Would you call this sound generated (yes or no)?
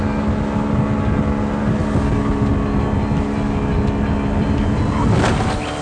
no